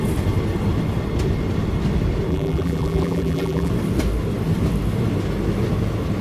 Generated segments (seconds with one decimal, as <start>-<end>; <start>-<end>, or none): 2.3-3.7